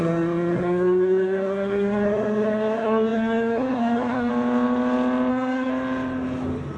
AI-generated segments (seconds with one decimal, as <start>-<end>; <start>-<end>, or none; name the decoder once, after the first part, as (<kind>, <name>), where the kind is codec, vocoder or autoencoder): 0.0-4.3 (codec, SNAC); 5.3-5.7